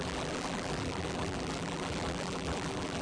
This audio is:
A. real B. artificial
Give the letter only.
B